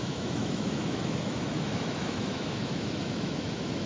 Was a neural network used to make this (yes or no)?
yes